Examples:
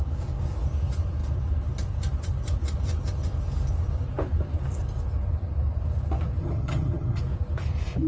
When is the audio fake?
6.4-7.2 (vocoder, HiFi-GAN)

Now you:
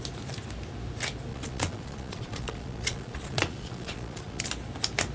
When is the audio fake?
1.3-4.4 (vocoder, Vocos)